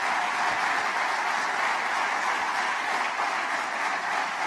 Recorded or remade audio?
recorded